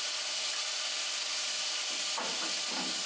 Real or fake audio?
real